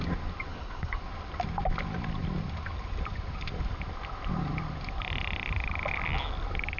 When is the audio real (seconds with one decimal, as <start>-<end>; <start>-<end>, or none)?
0.0-0.5; 1.0-6.8